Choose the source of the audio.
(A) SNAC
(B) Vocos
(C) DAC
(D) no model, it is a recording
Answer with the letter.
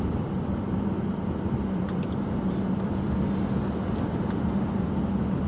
D